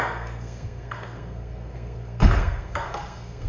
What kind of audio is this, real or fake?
fake